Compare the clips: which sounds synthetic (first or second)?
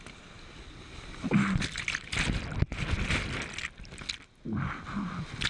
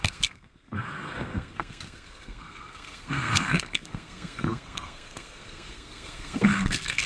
second